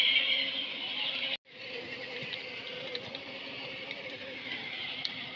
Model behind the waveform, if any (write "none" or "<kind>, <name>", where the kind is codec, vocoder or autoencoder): none